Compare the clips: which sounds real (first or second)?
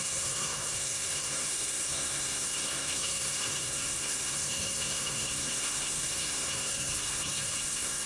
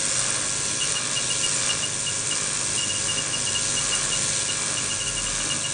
second